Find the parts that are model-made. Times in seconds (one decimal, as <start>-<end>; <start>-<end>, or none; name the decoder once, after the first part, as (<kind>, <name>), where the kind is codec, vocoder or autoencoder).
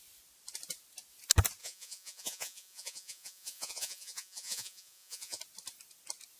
1.6-5.4 (vocoder, Vocos)